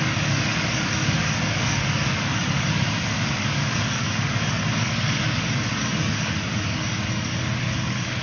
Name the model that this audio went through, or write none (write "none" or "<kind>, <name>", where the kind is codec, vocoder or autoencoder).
codec, DAC